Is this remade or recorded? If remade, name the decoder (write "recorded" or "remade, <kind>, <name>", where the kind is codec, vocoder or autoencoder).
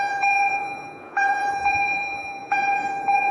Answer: remade, vocoder, Vocos